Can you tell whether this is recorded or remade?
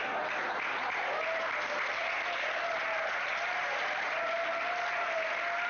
recorded